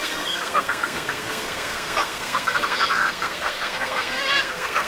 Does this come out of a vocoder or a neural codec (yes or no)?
yes